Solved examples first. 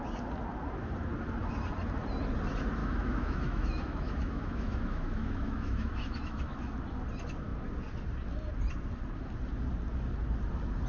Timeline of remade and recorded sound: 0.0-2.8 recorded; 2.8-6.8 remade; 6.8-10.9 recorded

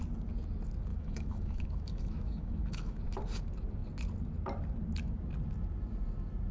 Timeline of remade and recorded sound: 0.0-0.9 recorded; 0.9-3.0 remade; 3.0-6.5 recorded

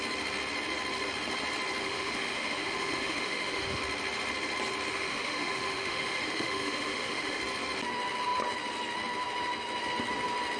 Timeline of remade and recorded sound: 0.0-1.8 recorded; 1.8-3.8 remade; 3.8-4.9 recorded; 4.9-7.4 remade; 7.4-10.6 recorded

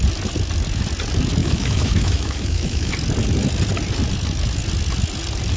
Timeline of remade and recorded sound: 0.0-1.4 recorded; 1.4-2.9 remade; 2.9-5.6 recorded

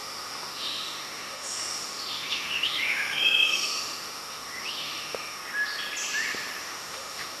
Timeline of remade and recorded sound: 0.0-5.4 remade; 5.4-6.6 recorded; 6.6-7.4 remade

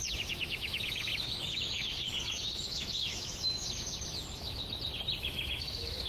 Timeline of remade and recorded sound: 0.0-4.6 remade; 4.6-5.2 recorded; 5.2-6.1 remade

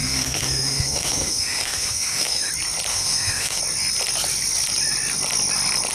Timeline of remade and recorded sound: 0.0-2.5 remade; 2.5-2.9 recorded; 2.9-3.6 remade; 3.6-5.9 recorded

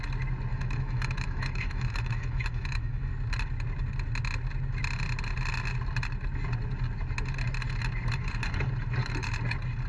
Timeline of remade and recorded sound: 0.0-0.5 recorded; 0.5-3.1 remade; 3.1-9.9 recorded